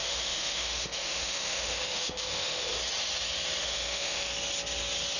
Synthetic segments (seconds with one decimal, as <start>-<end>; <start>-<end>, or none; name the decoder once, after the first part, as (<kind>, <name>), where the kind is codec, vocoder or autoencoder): 0.0-2.7 (autoencoder, DAC-VAE); 3.6-4.3

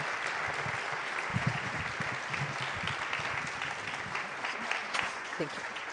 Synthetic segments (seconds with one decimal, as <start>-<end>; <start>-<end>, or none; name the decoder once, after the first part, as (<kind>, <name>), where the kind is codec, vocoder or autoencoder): 1.3-1.8 (vocoder, Vocos); 4.8-5.9

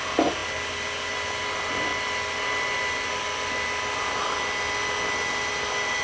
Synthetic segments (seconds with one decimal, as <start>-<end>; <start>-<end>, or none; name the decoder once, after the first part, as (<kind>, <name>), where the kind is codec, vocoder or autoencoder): none